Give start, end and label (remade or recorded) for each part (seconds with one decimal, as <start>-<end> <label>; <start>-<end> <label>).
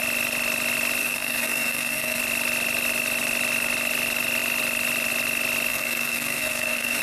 0.0-1.0 recorded; 1.0-2.2 remade; 2.2-5.7 recorded; 5.7-7.0 remade